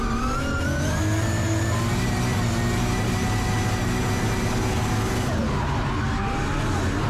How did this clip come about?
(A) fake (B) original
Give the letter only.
B